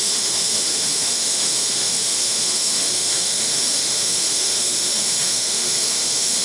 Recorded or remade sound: remade